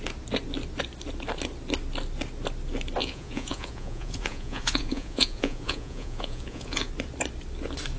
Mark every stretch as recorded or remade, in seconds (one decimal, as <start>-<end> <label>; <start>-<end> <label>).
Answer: 0.0-3.0 recorded; 3.0-6.9 remade; 6.9-8.0 recorded